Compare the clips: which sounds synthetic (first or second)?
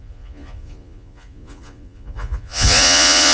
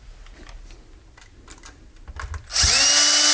first